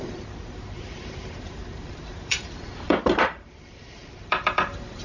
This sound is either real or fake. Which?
fake